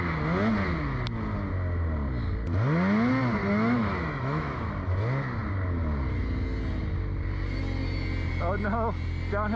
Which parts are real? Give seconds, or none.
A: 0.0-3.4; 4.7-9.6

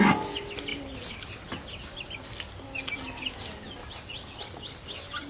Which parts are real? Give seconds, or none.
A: 0.0-5.3